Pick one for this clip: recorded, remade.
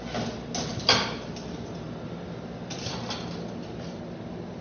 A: recorded